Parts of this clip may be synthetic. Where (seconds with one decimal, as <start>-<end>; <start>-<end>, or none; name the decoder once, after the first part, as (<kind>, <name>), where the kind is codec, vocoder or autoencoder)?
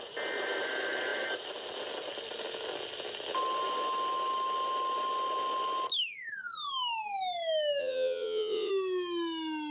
7.8-8.7 (vocoder, WaveNeXt)